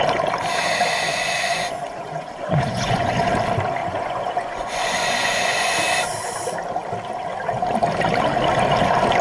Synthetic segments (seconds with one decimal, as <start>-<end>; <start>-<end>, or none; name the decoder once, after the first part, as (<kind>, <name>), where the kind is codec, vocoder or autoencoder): 1.1-3.3 (vocoder, Vocos); 3.8-5.8